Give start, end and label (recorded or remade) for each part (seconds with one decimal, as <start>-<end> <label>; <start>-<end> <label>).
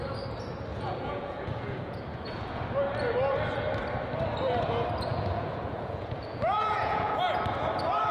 0.0-0.7 recorded; 0.7-2.6 remade; 2.6-5.1 recorded; 5.1-7.2 remade; 7.2-8.1 recorded